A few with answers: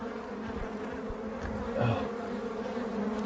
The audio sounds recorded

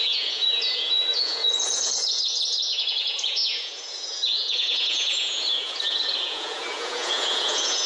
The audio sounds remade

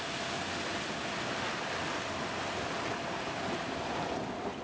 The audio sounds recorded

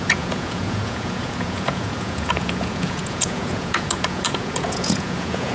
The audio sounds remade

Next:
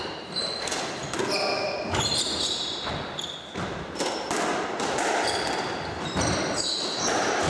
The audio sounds recorded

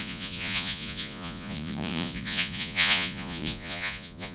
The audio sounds remade